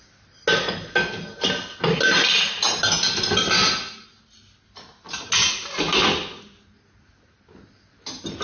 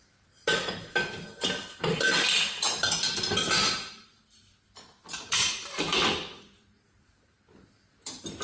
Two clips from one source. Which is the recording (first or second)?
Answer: first